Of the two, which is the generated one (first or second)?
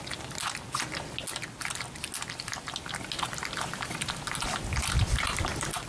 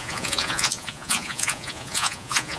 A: second